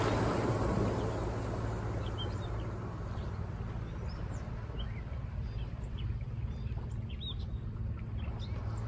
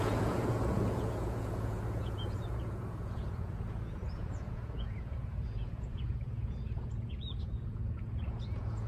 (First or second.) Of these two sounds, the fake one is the second